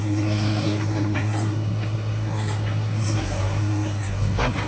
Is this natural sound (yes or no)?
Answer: no